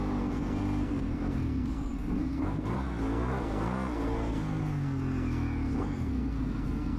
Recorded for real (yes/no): no